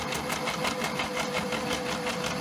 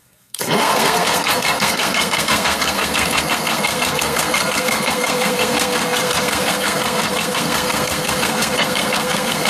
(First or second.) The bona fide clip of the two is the first